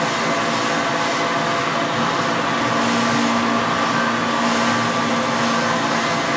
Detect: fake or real real